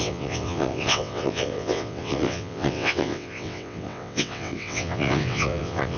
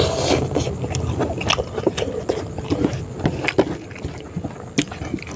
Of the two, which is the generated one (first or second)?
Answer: first